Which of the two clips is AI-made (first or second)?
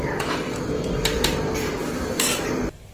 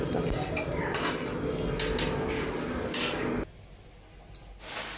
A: first